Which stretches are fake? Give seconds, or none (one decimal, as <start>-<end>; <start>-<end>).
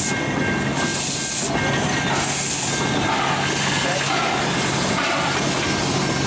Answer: none